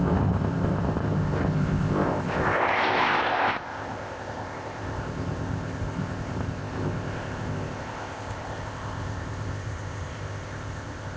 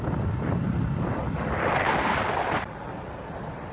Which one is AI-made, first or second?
first